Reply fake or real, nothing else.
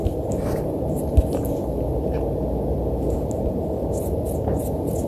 real